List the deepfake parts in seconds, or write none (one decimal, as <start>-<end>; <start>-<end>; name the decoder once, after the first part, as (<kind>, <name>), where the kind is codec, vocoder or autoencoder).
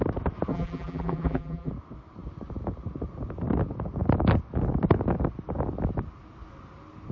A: 0.5-1.7 (vocoder, BigVGAN v2)